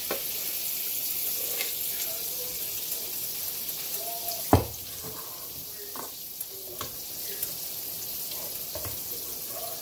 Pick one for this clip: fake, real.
real